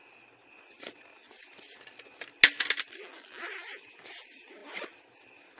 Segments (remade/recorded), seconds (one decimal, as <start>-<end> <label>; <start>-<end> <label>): 0.0-5.6 recorded